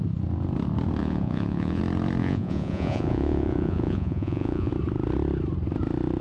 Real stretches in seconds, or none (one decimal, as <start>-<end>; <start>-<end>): 0.0-1.0; 1.8-2.2; 4.7-6.2